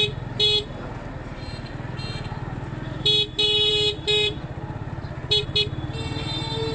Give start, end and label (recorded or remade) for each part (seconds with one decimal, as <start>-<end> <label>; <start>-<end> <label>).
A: 0.0-6.7 recorded